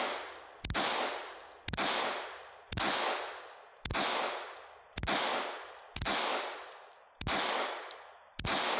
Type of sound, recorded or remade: recorded